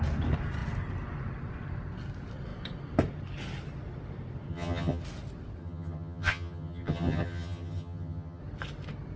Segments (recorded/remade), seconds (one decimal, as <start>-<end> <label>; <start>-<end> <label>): 0.0-4.5 recorded; 4.5-5.0 remade; 5.0-5.6 recorded; 5.6-8.4 remade; 8.4-9.2 recorded